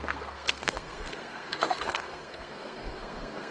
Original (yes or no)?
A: no